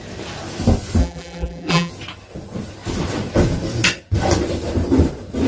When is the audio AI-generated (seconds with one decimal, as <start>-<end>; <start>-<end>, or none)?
1.0-1.9